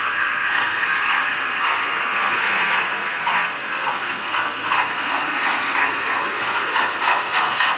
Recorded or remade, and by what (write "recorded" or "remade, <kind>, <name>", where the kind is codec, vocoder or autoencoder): remade, codec, SNAC